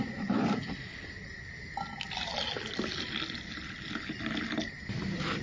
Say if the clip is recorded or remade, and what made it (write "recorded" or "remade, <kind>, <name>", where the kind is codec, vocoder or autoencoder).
recorded